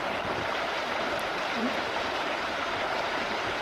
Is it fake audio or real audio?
fake